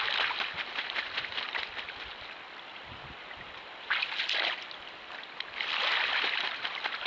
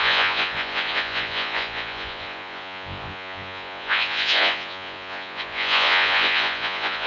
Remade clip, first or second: second